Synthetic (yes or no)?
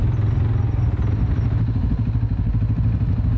no